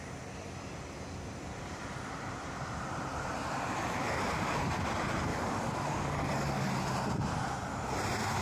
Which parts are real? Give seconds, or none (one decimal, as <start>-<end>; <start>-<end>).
0.0-5.3; 6.7-8.4